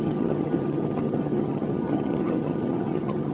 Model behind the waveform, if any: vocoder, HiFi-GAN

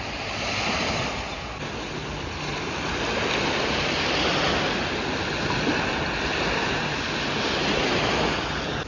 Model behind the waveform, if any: none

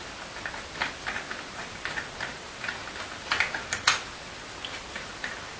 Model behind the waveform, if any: none